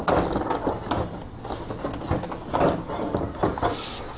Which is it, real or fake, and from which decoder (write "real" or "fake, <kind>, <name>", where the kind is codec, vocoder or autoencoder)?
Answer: real